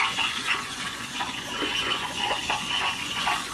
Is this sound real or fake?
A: fake